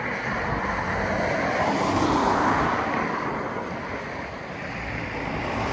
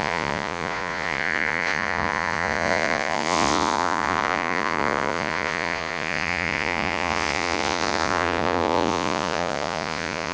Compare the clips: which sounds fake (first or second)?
second